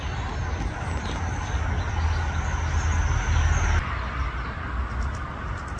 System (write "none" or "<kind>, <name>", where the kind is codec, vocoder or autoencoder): none